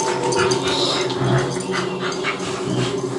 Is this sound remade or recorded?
recorded